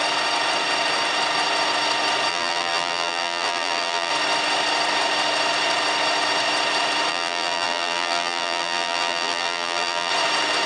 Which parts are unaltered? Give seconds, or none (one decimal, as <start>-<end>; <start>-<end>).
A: 0.0-2.3; 4.1-7.1; 10.1-10.7

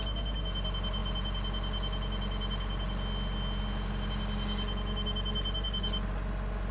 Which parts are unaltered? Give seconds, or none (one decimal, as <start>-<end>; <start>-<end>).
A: 0.0-6.7

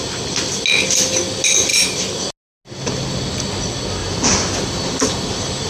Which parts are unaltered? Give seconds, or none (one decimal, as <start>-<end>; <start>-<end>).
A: 0.0-1.7; 2.2-4.0

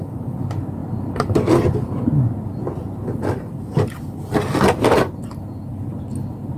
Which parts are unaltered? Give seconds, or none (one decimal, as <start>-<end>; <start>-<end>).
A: 0.0-6.6

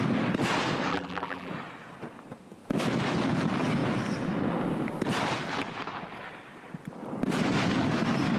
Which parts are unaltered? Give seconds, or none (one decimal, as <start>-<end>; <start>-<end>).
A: 0.0-0.9; 1.5-8.4

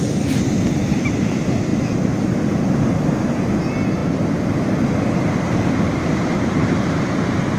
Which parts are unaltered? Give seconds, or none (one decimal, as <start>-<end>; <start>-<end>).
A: 0.0-4.0; 6.8-7.6

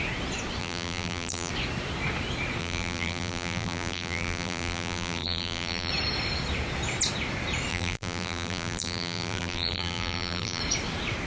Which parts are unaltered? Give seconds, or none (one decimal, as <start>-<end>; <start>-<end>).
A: 0.0-0.6; 1.5-2.6; 5.9-7.7; 10.6-11.3